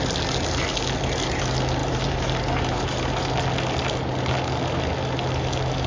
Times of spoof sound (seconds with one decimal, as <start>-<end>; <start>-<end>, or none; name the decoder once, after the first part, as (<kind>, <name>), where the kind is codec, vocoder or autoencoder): 1.8-3.3 (vocoder, BigVGAN v2)